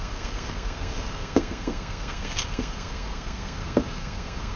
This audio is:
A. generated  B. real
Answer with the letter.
A